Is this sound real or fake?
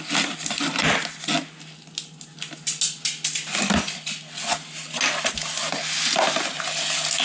real